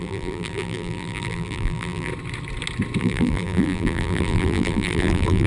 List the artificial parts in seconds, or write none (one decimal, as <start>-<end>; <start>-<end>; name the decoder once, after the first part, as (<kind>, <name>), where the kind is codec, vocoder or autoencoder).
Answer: 0.0-2.1 (vocoder, BigVGAN v2); 3.0-5.5